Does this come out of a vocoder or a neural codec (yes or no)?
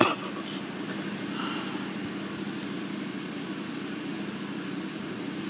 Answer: no